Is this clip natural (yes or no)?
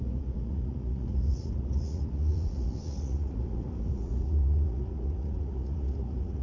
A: no